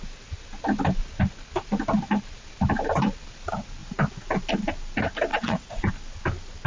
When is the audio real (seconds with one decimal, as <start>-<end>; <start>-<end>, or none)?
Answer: 0.0-5.3; 5.9-6.7